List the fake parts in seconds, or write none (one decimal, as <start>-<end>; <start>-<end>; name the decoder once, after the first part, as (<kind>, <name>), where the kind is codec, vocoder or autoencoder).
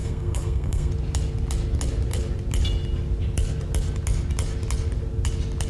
0.0-0.9 (codec, SNAC)